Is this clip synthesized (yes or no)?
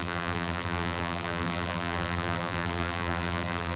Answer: yes